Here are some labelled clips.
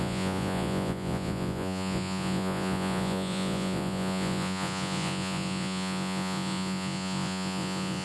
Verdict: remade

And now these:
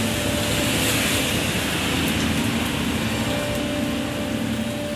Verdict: recorded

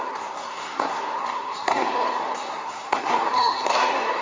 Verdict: remade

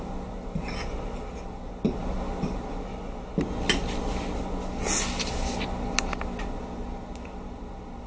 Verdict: recorded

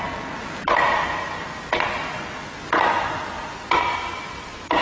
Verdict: recorded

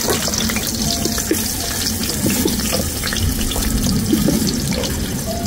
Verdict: recorded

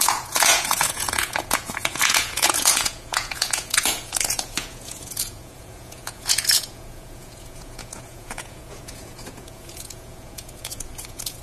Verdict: remade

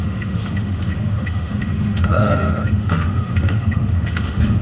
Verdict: remade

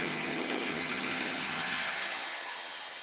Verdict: remade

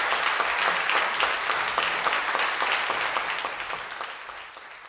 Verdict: recorded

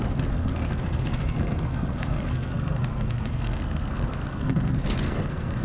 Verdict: remade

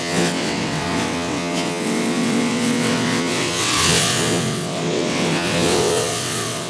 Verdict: remade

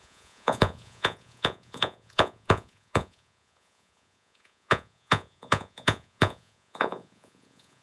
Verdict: remade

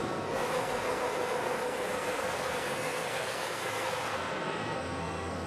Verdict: remade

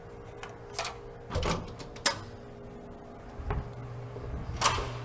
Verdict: recorded